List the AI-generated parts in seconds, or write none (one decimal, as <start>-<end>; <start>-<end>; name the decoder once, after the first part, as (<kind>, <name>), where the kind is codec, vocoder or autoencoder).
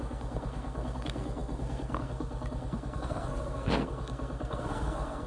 0.0-5.3 (codec, SNAC)